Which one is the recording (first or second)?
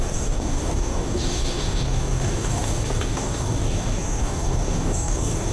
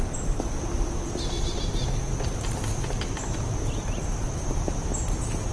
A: second